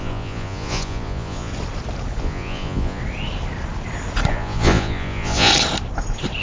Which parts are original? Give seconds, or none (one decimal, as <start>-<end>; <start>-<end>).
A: 1.5-2.2; 3.0-4.3; 5.5-6.4